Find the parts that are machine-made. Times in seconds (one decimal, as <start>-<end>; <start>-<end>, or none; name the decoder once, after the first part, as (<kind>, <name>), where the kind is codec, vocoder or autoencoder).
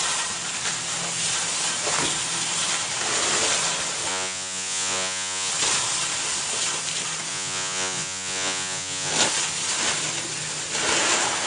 4.1-5.5 (vocoder, Vocos); 7.3-9.1